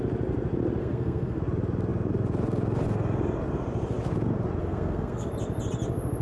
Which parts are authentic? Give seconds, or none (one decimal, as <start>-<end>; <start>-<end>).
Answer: 0.0-0.8; 1.4-4.6; 5.3-6.2

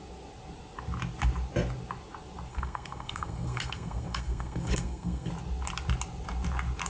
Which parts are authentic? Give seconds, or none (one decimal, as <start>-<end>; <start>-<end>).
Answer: 0.0-2.5; 5.3-6.9

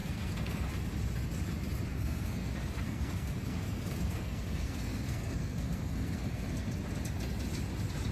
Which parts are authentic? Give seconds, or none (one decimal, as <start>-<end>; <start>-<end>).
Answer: 0.7-1.9; 6.8-8.1

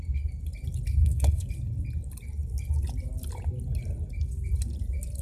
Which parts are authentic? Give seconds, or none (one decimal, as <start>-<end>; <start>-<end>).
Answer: 0.0-1.0; 1.5-5.2

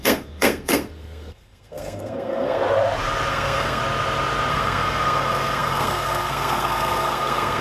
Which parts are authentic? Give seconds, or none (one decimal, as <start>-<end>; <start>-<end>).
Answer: 2.6-3.3; 3.8-4.5